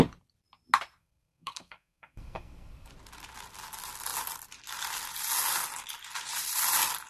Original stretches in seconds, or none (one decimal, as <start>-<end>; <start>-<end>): 0.0-1.0; 2.9-7.1